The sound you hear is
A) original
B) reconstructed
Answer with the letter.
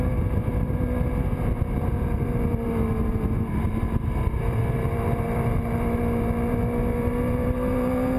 B